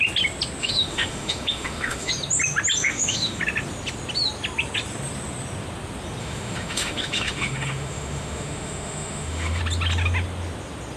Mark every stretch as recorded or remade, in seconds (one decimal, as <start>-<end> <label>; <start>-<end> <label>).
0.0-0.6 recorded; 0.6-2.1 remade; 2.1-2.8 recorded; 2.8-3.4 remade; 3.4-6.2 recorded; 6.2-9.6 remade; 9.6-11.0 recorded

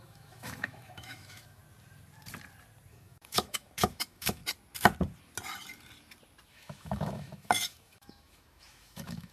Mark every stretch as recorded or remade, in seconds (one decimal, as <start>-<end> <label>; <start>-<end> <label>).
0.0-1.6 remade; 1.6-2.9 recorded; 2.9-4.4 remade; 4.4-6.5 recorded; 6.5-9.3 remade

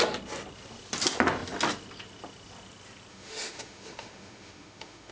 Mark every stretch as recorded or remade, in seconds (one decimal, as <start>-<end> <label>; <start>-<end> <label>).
0.0-3.1 recorded; 3.1-5.1 remade